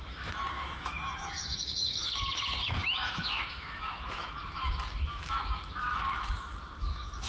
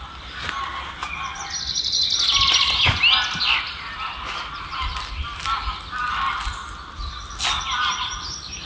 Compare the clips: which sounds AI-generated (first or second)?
first